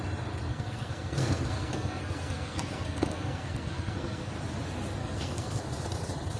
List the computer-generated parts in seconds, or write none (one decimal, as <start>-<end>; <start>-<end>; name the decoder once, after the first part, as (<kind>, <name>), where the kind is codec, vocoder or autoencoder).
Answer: 0.5-4.3 (codec, SNAC); 5.0-5.6

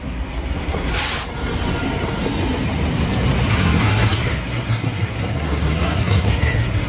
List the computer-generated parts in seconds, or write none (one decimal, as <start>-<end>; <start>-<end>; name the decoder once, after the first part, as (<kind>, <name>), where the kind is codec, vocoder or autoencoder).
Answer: 0.0-0.9 (codec, SNAC); 3.5-6.9